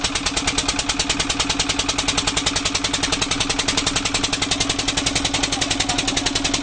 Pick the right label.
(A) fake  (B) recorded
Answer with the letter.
B